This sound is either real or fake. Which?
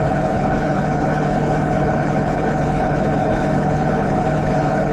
fake